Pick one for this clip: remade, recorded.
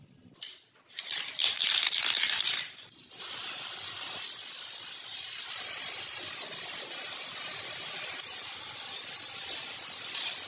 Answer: recorded